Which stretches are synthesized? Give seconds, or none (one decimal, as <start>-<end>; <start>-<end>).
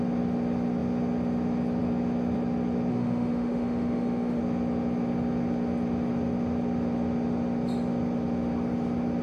2.9-4.4